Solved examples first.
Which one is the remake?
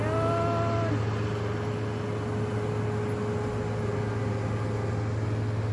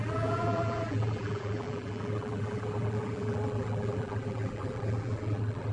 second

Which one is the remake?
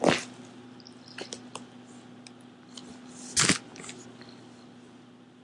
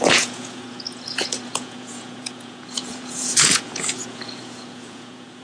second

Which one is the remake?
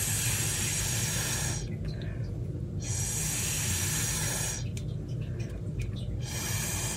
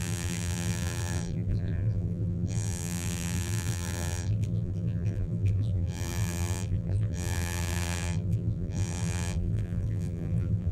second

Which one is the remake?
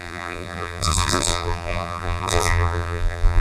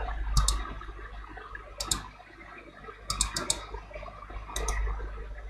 first